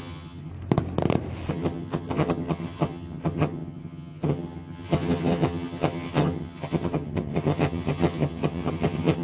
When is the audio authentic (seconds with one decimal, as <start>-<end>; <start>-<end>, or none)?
0.5-1.5